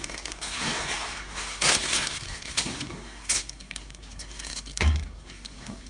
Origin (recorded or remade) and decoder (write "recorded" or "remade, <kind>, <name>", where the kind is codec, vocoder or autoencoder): remade, codec, SNAC